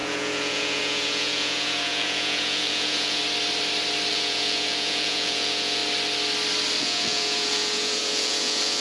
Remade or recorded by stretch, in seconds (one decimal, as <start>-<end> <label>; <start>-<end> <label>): 0.0-3.2 remade; 3.2-4.1 recorded; 4.1-5.8 remade; 5.8-6.8 recorded; 6.8-8.8 remade